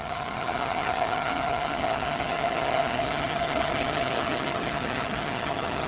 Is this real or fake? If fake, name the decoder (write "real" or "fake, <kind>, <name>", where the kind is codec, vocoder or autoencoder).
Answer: fake, vocoder, HiFi-GAN